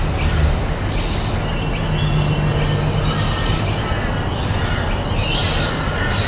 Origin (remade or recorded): recorded